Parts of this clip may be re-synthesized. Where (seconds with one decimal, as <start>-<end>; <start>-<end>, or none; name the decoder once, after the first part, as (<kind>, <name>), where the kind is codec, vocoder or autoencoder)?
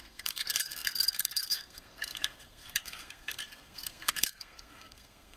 0.0-5.4 (codec, SNAC)